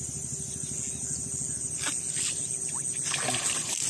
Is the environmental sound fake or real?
real